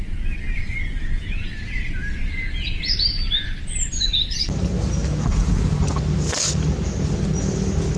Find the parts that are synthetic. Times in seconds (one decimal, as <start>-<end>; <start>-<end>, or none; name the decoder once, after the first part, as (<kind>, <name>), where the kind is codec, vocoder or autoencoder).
5.0-6.0 (vocoder, Vocos)

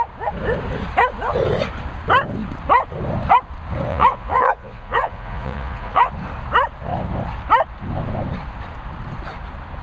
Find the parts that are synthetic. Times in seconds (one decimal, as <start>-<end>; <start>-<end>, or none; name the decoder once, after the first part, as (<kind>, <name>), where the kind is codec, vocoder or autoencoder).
3.9-6.1 (vocoder, Vocos)

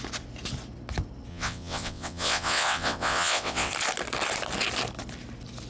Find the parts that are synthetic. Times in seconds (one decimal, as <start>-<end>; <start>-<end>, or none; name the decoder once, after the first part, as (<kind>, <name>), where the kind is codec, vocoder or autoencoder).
1.3-3.7 (vocoder, WaveNeXt)

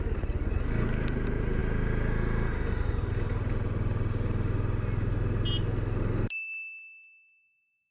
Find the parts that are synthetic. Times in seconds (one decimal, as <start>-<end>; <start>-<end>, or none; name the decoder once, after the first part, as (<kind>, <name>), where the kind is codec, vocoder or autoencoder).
none

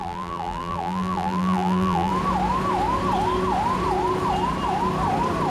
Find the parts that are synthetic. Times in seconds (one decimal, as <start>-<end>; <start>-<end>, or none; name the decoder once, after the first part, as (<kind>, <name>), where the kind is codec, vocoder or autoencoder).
0.0-2.1 (vocoder, BigVGAN v2)

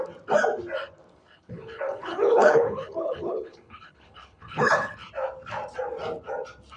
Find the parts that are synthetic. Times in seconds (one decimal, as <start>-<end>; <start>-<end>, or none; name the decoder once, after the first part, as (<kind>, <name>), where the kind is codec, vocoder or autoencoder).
1.1-5.1 (codec, HILCodec)

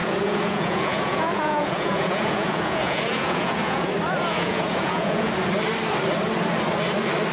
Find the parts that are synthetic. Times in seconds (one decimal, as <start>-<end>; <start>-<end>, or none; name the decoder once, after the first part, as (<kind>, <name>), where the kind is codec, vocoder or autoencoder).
0.0-3.9 (vocoder, Vocos); 4.3-5.3

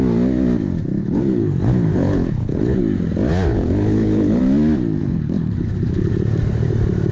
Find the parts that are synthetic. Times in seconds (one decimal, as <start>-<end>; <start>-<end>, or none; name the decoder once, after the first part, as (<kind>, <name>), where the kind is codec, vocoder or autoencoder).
1.0-2.8 (codec, HILCodec); 3.5-4.4; 5.0-6.1